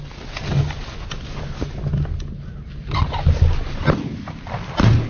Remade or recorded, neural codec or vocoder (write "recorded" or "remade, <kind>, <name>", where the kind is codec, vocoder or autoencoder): recorded